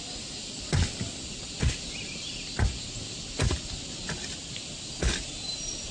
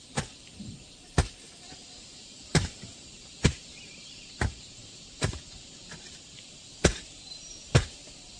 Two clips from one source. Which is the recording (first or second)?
first